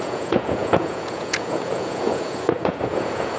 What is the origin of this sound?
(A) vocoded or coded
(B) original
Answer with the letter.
A